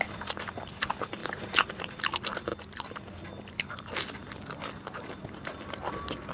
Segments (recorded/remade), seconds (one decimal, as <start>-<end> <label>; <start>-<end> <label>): 0.0-1.2 recorded; 1.2-1.9 remade; 1.9-6.3 recorded